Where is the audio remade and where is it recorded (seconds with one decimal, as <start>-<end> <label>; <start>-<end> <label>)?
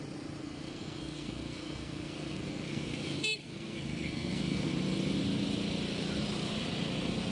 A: 0.0-0.4 recorded; 0.4-4.7 remade; 4.7-7.3 recorded